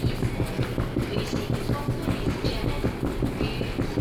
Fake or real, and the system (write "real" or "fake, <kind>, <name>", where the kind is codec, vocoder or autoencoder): real